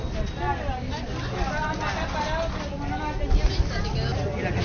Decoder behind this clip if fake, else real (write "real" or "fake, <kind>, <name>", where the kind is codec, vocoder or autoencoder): real